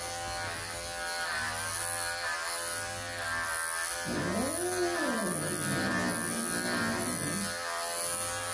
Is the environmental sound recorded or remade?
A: recorded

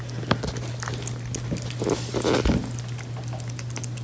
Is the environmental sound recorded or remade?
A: recorded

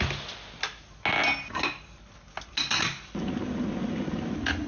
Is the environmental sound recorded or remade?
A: recorded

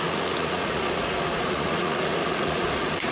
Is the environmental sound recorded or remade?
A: remade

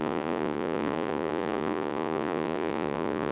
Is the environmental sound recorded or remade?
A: remade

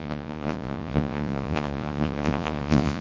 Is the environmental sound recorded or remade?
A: remade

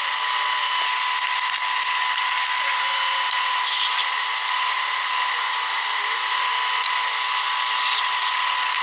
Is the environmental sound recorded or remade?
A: recorded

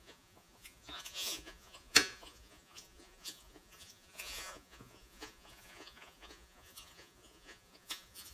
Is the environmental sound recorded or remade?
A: remade